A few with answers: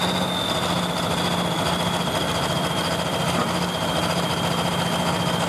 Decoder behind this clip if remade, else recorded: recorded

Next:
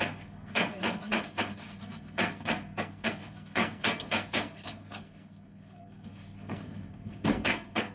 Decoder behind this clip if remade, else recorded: remade, codec, SNAC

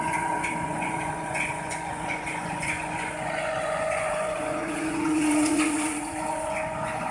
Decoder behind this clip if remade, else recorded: remade, vocoder, Vocos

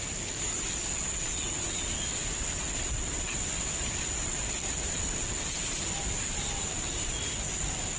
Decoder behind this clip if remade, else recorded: recorded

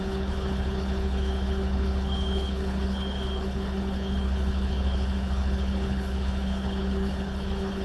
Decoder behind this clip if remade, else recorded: remade, codec, HILCodec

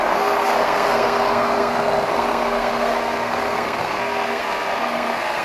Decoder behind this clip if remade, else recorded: remade, codec, SNAC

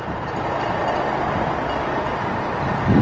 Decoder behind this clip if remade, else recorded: recorded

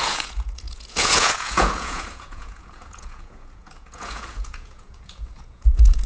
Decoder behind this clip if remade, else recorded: remade, vocoder, Vocos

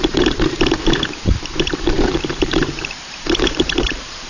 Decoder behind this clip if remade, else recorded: remade, vocoder, BigVGAN v2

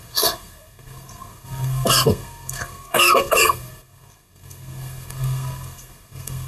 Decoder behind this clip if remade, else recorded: remade, codec, SNAC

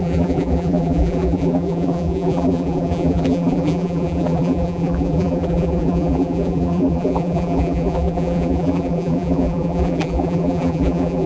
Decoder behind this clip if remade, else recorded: remade, vocoder, BigVGAN v2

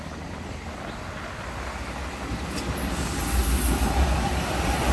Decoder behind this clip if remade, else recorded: recorded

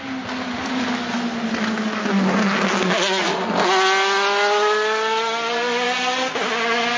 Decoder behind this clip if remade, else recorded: recorded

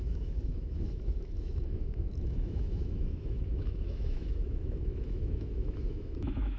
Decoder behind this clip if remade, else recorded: remade, autoencoder, DAC-VAE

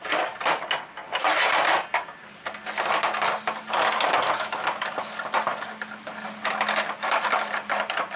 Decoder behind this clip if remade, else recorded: recorded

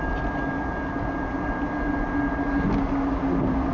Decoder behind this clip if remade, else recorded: recorded